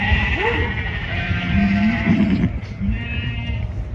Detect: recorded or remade remade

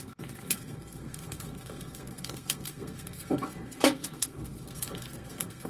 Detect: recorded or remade remade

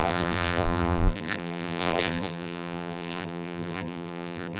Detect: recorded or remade remade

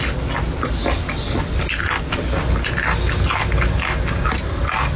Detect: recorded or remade recorded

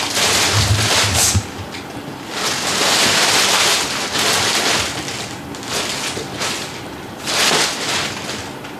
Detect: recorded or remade recorded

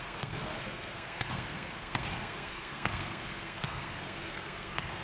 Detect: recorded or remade remade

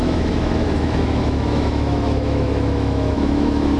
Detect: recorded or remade remade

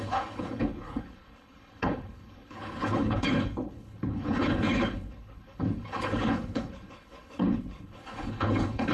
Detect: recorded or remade remade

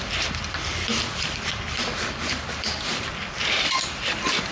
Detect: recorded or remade remade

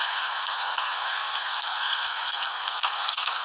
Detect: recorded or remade remade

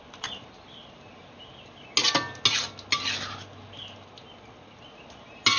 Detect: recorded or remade recorded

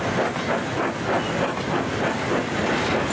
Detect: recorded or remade recorded